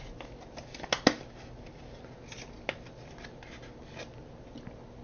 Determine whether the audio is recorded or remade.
recorded